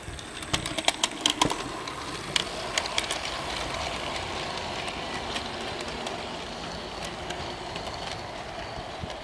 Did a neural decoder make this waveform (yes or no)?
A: no